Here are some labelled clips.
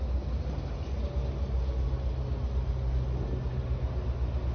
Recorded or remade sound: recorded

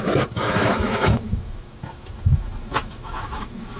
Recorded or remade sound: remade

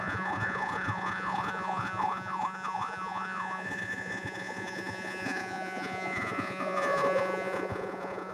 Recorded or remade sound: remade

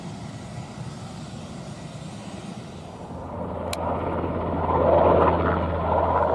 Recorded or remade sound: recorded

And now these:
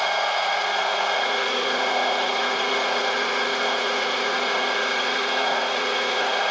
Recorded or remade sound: remade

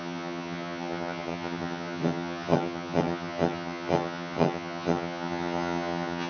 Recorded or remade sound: remade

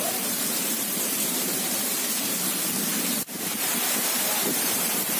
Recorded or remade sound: remade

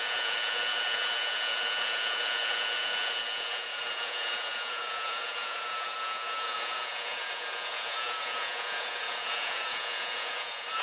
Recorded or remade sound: remade